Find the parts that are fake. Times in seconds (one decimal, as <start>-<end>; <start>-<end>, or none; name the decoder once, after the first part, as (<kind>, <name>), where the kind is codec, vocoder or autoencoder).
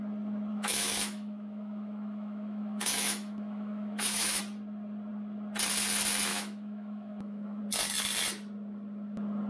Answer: 0.5-4.4 (autoencoder, DAC-VAE); 6.3-7.6